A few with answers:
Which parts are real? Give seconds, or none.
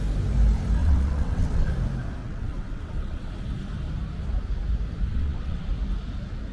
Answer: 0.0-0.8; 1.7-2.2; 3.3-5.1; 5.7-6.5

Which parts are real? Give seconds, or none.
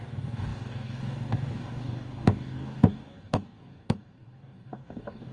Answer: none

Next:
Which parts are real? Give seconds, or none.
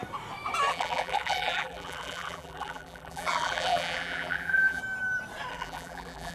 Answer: 0.0-0.7; 4.8-5.5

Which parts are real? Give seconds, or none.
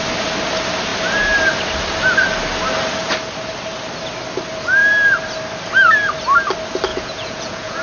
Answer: 0.0-6.9